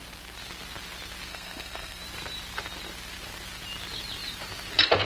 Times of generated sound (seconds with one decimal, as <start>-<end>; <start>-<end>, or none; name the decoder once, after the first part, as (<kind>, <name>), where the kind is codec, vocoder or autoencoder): 1.3-2.0 (codec, SNAC)